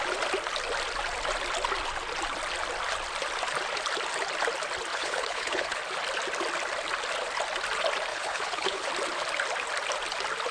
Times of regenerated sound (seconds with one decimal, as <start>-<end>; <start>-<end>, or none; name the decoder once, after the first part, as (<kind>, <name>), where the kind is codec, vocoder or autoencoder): 4.9-5.8 (codec, HILCodec); 8.1-8.9